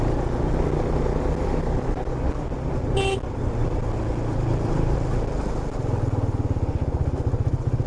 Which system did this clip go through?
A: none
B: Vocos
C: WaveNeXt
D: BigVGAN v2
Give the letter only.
A